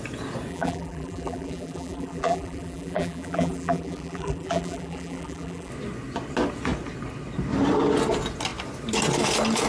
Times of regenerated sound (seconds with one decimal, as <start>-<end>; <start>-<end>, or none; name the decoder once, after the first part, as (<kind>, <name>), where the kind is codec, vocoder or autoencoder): 0.5-5.7 (vocoder, BigVGAN v2)